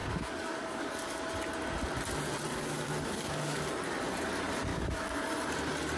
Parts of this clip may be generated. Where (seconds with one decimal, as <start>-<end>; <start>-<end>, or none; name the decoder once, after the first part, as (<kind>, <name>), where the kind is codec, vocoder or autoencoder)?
0.0-1.3 (codec, DAC); 2.5-3.7; 4.7-5.2